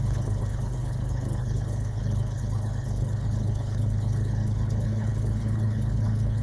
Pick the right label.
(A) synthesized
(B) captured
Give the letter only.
A